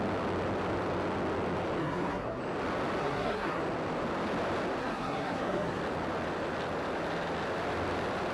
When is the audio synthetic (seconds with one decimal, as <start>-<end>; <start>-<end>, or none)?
1.8-2.4; 3.0-3.6; 4.8-5.8